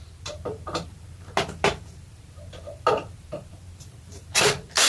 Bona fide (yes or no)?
no